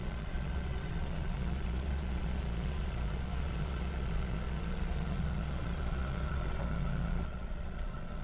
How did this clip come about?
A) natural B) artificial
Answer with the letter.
B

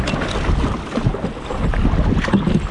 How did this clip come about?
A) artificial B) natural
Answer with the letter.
B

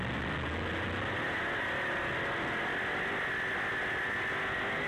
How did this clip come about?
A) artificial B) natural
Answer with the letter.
B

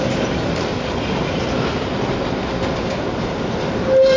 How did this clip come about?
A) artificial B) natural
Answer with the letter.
B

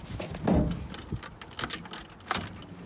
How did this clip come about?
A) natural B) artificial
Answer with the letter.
A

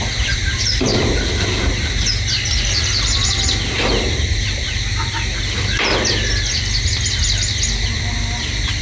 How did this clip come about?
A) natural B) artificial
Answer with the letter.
A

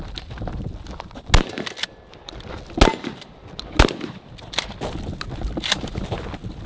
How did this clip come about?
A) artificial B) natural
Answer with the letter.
B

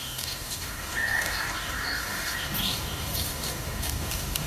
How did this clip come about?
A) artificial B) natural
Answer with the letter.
A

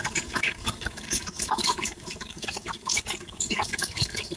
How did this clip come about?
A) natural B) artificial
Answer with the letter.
B